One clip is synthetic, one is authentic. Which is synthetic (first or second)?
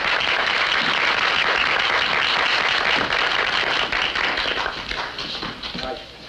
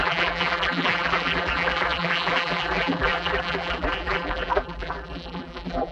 second